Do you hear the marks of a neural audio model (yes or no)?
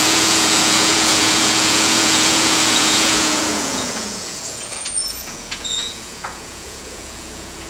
yes